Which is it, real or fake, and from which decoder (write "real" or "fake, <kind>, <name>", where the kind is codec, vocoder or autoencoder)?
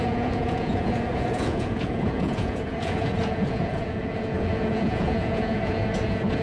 fake, vocoder, Vocos